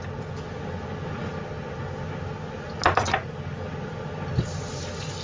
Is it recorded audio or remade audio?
recorded